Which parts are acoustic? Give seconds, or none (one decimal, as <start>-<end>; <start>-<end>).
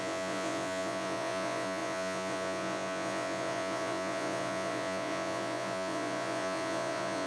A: none